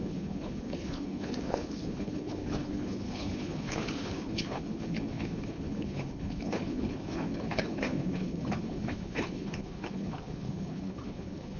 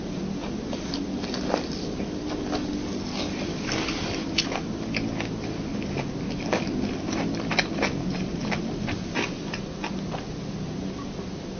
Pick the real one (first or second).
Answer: second